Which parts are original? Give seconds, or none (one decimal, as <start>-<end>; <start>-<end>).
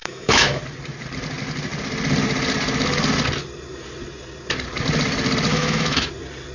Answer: 0.6-5.5; 6.1-6.5